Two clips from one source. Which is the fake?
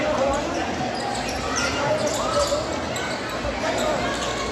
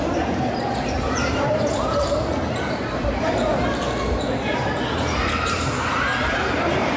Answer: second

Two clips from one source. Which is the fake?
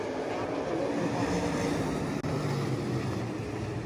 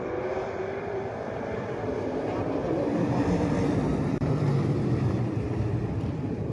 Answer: second